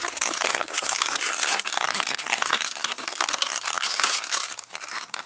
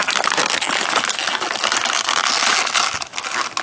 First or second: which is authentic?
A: second